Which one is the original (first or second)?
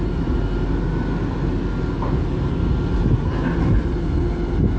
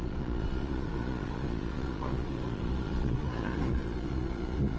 first